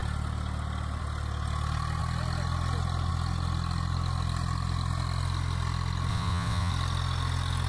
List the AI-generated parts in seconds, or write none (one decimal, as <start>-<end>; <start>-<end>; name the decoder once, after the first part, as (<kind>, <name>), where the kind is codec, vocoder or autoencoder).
6.1-6.7 (vocoder, WaveNeXt)